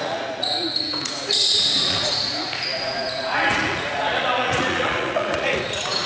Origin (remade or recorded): remade